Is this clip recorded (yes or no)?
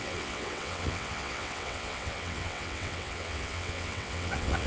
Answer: no